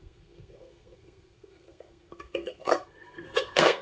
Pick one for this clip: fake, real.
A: fake